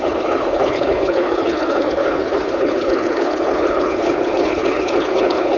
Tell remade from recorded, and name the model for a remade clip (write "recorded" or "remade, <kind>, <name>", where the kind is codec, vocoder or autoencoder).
remade, codec, HILCodec